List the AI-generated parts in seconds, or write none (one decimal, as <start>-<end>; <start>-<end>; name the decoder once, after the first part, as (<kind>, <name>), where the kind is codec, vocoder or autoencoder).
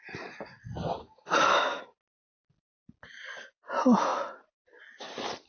1.0-1.8 (codec, SNAC)